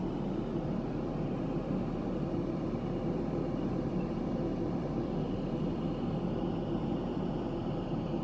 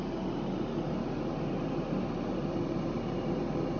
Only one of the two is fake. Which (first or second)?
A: first